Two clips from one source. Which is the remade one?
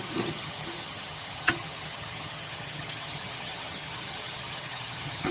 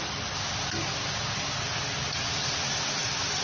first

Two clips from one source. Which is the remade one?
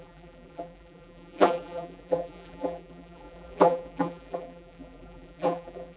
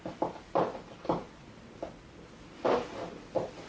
first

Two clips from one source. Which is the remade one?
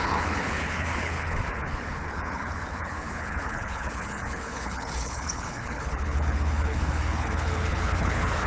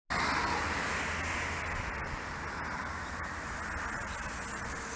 first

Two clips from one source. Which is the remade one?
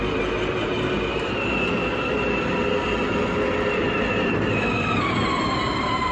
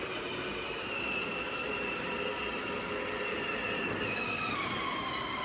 second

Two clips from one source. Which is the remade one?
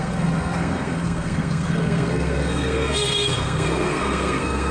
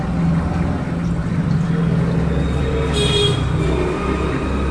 first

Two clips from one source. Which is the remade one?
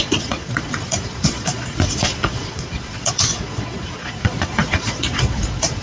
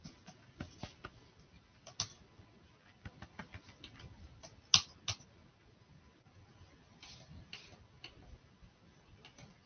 first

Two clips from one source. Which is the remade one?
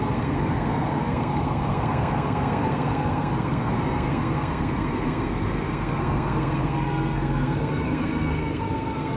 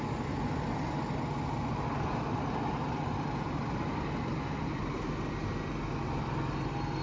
first